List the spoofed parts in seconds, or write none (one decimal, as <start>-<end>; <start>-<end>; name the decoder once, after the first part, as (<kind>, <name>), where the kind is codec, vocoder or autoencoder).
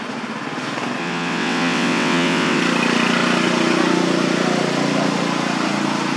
1.0-2.6 (vocoder, WaveNeXt)